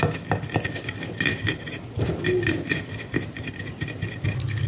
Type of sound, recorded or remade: recorded